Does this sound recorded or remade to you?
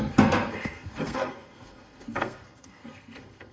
remade